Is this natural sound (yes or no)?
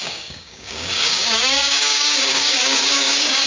no